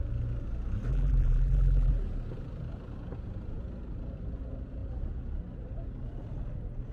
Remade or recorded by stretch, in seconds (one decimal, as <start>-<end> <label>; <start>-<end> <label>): 0.0-0.9 recorded; 0.9-1.9 remade; 1.9-6.9 recorded

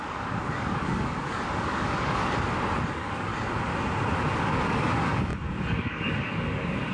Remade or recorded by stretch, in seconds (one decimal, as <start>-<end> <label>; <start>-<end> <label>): 0.0-2.2 remade; 2.2-2.9 recorded; 2.9-3.3 remade; 3.3-4.4 recorded; 4.4-6.9 remade

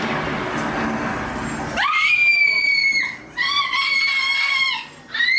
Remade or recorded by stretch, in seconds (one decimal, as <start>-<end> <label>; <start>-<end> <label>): 0.0-5.4 recorded

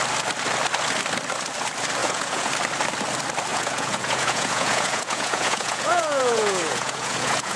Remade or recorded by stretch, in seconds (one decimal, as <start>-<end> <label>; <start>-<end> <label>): 0.0-2.0 recorded; 2.0-2.5 remade; 2.5-3.5 recorded; 3.5-7.6 remade

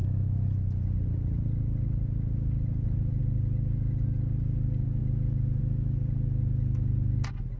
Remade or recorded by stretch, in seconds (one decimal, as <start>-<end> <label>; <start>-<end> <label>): 0.0-7.6 recorded

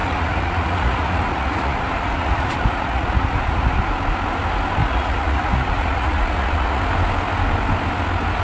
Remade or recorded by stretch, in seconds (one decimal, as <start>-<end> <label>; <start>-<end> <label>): 0.0-3.8 remade; 3.8-4.8 recorded; 4.8-6.8 remade; 6.8-8.4 recorded

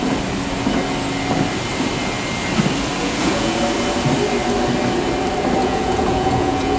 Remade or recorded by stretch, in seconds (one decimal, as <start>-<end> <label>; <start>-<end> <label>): 0.0-3.0 recorded; 3.0-3.6 remade; 3.6-5.6 recorded; 5.6-6.8 remade

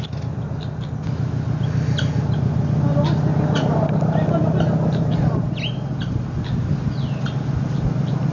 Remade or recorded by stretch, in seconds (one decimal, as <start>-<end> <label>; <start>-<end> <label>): 0.0-8.3 recorded